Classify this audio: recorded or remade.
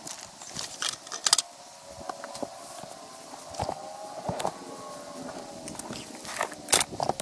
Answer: recorded